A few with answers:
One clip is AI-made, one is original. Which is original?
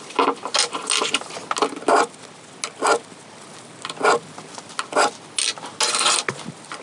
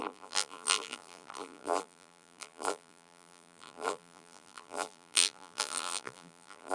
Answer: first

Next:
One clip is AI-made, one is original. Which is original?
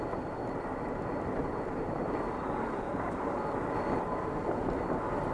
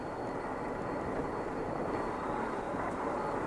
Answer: second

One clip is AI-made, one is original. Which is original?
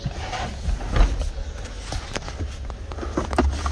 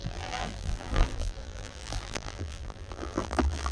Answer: first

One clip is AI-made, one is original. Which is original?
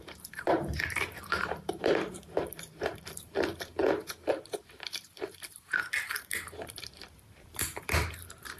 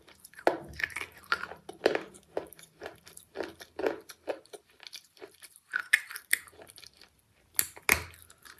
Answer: second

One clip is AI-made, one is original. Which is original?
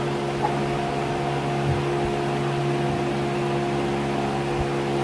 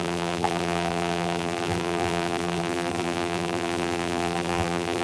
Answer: first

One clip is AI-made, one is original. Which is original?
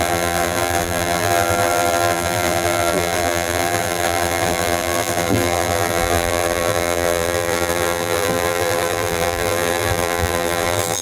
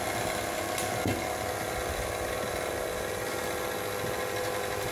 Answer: second